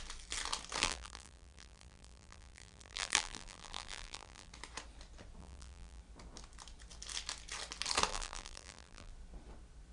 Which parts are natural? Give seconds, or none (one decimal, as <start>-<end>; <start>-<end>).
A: 0.0-0.8; 4.5-5.4; 6.0-8.1; 9.1-9.9